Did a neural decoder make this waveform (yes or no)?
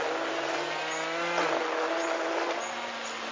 no